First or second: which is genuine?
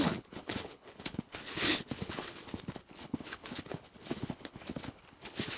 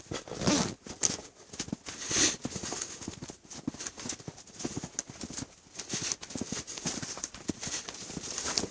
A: second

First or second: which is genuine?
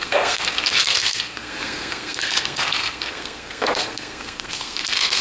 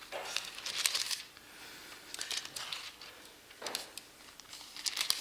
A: second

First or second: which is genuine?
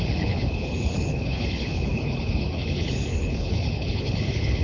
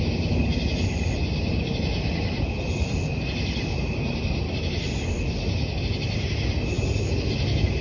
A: second